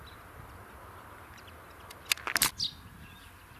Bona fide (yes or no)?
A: yes